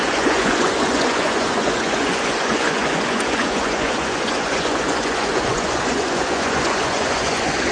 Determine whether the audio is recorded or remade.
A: remade